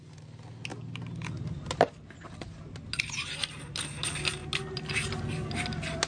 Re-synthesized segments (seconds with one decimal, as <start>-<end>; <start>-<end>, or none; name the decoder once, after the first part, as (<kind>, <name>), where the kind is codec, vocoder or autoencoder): none